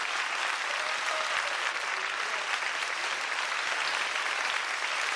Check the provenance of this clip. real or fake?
real